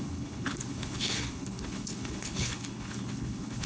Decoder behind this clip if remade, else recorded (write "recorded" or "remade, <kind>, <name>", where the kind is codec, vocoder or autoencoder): remade, codec, HILCodec